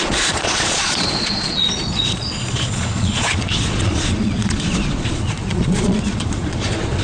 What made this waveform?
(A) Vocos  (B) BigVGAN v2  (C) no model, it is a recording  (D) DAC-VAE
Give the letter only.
A